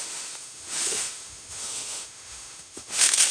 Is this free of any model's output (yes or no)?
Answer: no